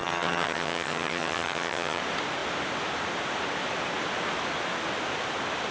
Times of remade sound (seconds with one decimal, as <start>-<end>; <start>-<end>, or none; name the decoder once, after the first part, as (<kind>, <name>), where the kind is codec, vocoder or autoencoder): 0.0-2.0 (vocoder, HiFi-GAN)